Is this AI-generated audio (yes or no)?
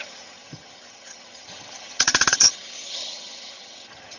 yes